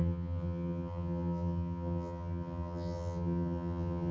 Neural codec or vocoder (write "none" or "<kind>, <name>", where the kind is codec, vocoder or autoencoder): vocoder, HiFi-GAN